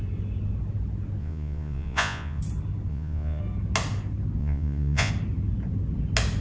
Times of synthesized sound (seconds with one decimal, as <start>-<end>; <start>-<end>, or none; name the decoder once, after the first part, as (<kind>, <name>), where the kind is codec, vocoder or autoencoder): 1.2-2.4 (vocoder, Vocos); 2.9-3.4; 4.4-5.1